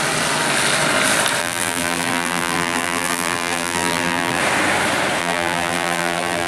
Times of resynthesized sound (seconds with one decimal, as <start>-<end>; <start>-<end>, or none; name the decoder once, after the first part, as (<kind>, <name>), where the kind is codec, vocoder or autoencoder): 1.4-4.4 (vocoder, BigVGAN v2); 5.2-6.5